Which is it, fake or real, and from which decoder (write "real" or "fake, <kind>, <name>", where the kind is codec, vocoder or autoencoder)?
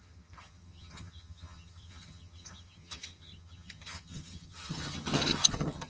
fake, vocoder, HiFi-GAN